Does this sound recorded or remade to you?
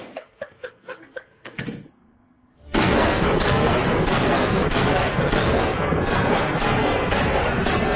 remade